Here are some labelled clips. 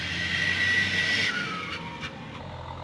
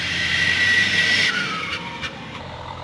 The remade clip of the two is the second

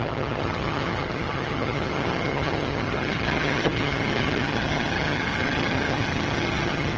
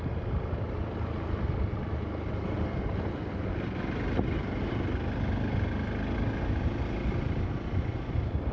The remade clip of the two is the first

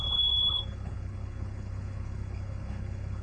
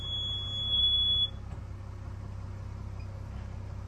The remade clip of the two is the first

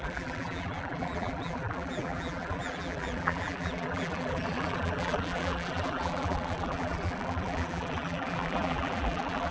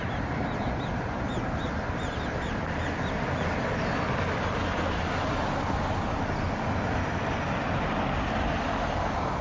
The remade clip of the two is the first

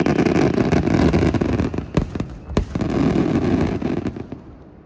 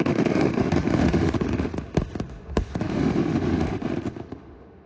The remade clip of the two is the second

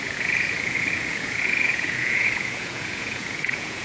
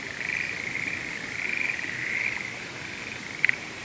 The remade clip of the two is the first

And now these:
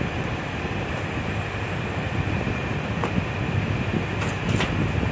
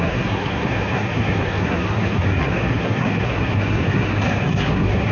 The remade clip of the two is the second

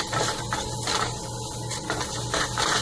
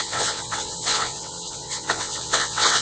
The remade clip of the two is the second